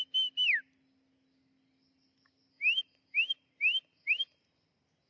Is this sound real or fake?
real